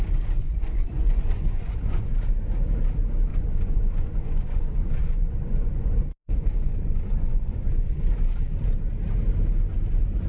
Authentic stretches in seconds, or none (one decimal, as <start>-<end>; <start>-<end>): 0.0-0.4; 2.1-3.3; 8.0-10.3